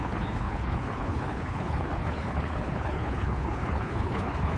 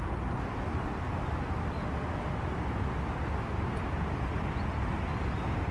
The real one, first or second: second